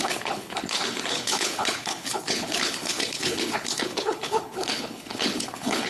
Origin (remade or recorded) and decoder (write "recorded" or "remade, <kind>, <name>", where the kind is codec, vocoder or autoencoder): remade, codec, HILCodec